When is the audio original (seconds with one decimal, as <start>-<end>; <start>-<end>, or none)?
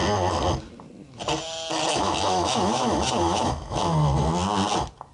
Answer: 0.0-1.9; 3.8-5.1